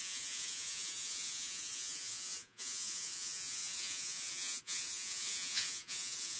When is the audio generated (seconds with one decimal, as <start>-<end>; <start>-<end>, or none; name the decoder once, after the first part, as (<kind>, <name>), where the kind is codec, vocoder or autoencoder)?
0.0-6.4 (vocoder, Vocos)